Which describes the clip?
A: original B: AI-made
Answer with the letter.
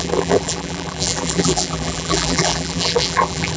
B